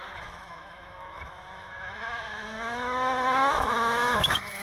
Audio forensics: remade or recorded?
remade